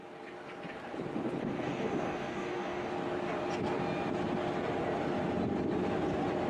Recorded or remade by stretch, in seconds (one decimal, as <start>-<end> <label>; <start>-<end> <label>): 0.0-1.4 recorded; 1.4-2.9 remade; 2.9-6.5 recorded

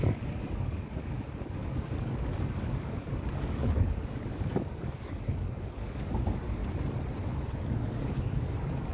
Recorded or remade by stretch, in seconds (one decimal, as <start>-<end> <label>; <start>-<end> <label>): 0.0-6.6 remade; 6.6-7.2 recorded; 7.2-8.9 remade

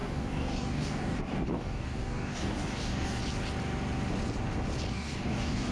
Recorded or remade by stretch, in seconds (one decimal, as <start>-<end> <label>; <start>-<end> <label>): 0.0-3.2 remade; 3.2-4.9 recorded; 4.9-5.7 remade

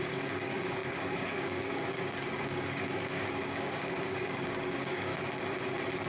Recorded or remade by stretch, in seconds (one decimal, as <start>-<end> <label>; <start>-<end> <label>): 0.0-5.1 remade; 5.1-6.1 recorded

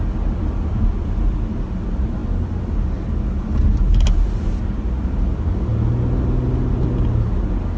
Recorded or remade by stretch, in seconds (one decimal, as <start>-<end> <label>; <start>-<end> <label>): 0.0-7.8 recorded